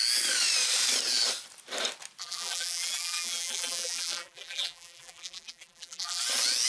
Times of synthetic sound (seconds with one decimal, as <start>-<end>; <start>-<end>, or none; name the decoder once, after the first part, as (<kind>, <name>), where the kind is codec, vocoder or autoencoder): 2.2-6.2 (vocoder, BigVGAN v2)